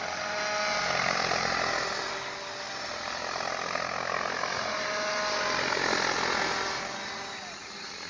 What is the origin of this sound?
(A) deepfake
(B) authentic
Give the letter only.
B